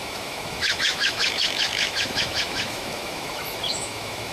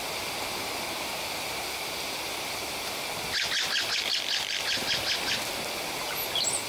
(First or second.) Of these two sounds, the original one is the second